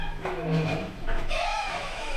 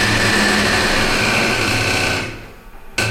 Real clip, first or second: second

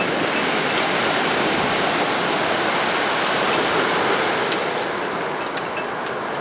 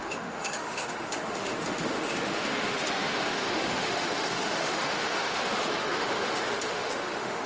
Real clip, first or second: first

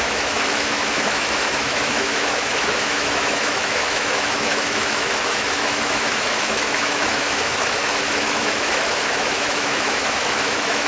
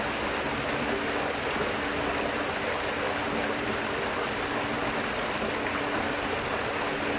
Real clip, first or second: second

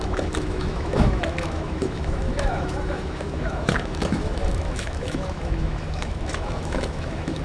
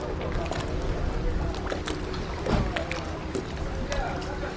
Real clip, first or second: second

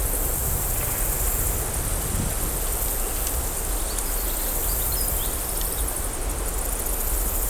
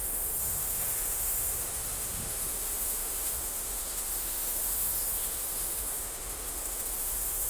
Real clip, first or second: first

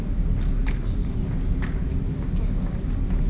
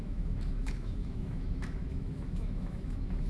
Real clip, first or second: first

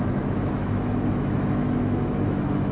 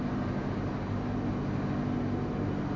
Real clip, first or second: second